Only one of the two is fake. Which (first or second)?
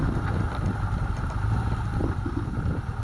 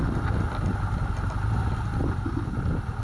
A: first